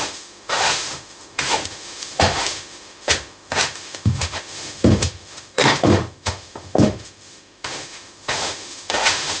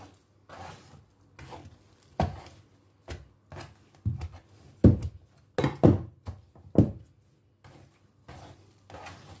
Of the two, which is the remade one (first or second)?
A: first